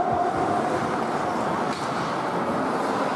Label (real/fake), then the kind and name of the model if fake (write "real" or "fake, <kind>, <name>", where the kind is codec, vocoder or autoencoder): real